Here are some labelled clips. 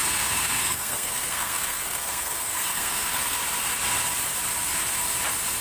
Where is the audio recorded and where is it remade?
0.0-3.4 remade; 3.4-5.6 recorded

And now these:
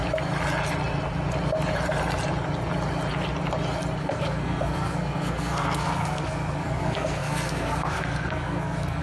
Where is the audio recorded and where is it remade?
0.0-4.0 recorded; 4.0-9.0 remade

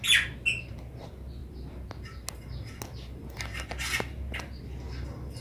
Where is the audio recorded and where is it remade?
0.0-5.4 recorded

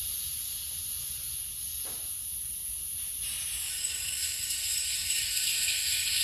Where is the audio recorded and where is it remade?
0.0-3.7 recorded; 3.7-6.2 remade

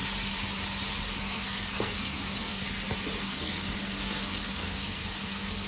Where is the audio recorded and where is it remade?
0.0-1.2 recorded; 1.2-2.6 remade; 2.6-3.2 recorded; 3.2-5.7 remade

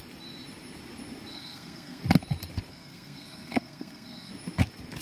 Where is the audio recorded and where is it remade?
0.0-1.3 recorded; 1.3-2.0 remade; 2.0-2.7 recorded; 2.7-4.3 remade; 4.3-5.0 recorded

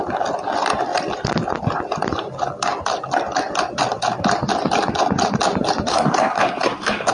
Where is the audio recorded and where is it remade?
0.0-5.9 recorded; 5.9-7.1 remade

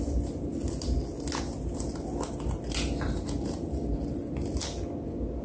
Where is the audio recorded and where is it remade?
0.0-5.4 recorded